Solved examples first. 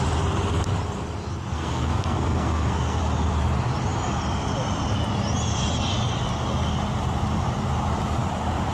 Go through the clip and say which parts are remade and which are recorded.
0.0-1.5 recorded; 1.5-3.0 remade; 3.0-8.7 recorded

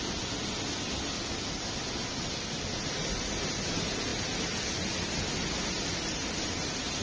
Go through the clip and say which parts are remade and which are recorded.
0.0-7.0 recorded

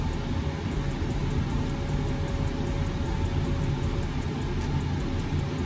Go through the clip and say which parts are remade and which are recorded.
0.0-5.7 recorded

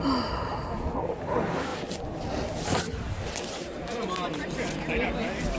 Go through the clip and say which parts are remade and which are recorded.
0.0-5.6 recorded

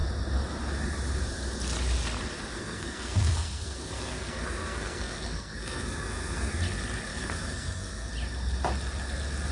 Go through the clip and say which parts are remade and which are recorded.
0.0-2.5 recorded; 2.5-6.5 remade; 6.5-7.1 recorded; 7.1-8.1 remade; 8.1-9.5 recorded